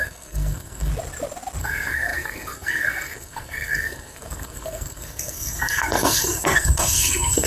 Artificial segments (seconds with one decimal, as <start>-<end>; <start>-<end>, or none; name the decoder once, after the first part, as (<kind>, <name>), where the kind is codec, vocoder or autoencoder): 0.0-0.9 (codec, SNAC); 1.6-7.5